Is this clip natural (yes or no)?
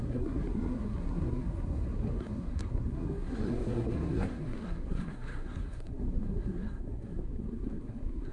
no